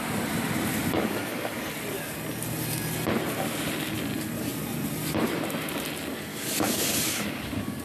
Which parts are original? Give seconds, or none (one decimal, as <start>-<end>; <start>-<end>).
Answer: 0.0-1.0; 1.6-6.3

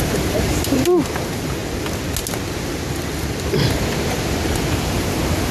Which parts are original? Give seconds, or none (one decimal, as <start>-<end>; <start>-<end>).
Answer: 1.6-2.9

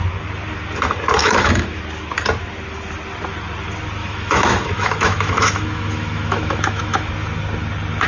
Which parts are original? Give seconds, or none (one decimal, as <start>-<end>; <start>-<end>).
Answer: 0.0-1.2; 1.8-4.0; 7.1-8.1

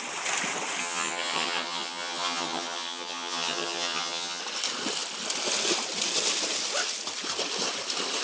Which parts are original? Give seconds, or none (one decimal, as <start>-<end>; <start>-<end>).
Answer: 0.0-0.8; 4.4-8.2

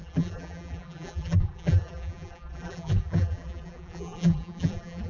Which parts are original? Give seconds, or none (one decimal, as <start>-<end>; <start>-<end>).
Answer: none

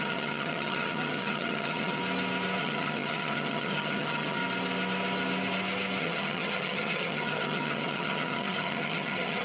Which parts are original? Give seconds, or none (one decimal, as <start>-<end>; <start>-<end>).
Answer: 2.0-2.6; 4.4-6.0

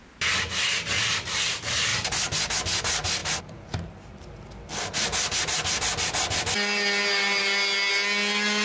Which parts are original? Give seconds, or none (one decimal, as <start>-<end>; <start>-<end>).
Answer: 0.0-8.6